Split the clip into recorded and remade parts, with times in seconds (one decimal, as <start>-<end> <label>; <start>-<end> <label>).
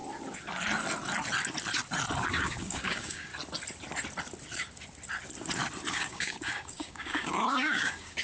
0.0-2.3 recorded; 2.3-3.3 remade; 3.3-5.9 recorded; 5.9-8.2 remade